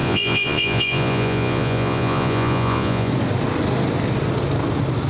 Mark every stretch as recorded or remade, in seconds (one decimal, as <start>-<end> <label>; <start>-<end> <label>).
0.0-3.1 remade; 3.1-5.1 recorded

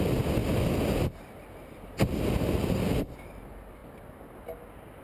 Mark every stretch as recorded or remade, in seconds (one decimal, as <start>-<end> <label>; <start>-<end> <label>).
0.0-0.4 recorded; 0.4-3.4 remade; 3.4-5.0 recorded

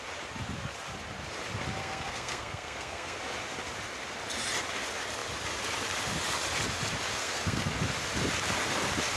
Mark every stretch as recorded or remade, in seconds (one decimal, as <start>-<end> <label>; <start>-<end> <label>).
0.0-1.8 recorded; 1.8-3.2 remade; 3.2-7.2 recorded; 7.2-7.7 remade; 7.7-9.2 recorded